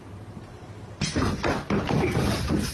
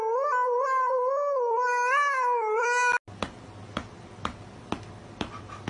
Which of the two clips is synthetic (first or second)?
first